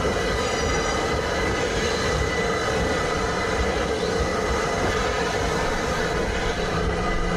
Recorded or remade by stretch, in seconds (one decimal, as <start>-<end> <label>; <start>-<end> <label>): 0.0-7.4 recorded